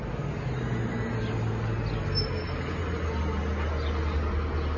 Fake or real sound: real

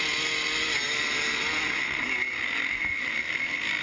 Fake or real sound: real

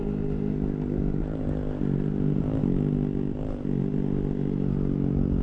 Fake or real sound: real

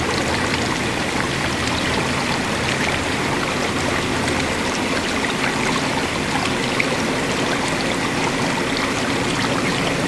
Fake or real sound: real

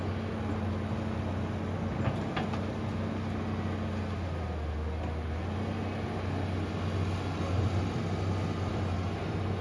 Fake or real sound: real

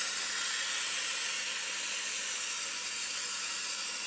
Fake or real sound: real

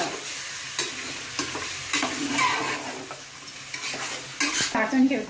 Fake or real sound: real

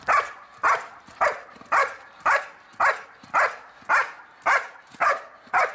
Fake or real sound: real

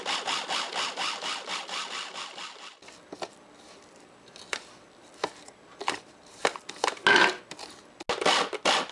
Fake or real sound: real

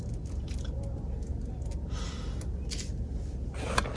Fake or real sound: real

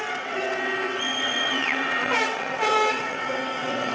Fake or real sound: fake